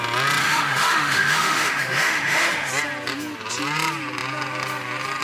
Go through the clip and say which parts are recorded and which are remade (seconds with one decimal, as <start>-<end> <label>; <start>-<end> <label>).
0.0-0.4 recorded; 0.4-2.7 remade; 2.7-5.2 recorded